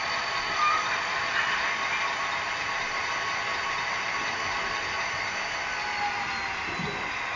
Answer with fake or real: real